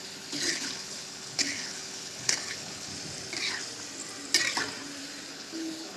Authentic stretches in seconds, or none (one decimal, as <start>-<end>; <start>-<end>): 2.9-5.3